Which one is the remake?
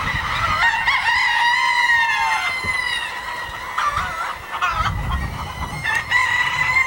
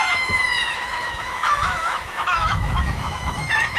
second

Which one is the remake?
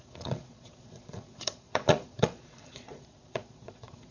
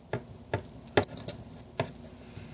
first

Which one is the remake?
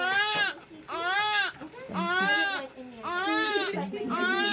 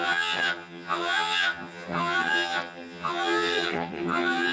second